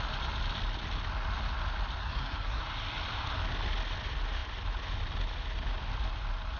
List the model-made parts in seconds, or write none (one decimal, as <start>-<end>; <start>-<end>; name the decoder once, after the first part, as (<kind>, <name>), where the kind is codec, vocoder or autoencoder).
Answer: 2.0-2.6 (codec, SNAC)